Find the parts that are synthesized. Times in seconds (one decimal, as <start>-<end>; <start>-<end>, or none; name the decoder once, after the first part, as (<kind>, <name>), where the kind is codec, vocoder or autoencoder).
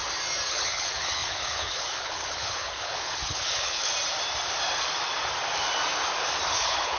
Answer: 0.5-3.9 (codec, HILCodec); 6.5-7.0